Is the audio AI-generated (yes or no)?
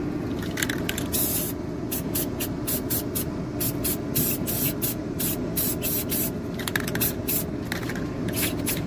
no